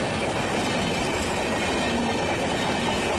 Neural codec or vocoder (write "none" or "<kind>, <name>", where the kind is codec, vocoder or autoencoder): none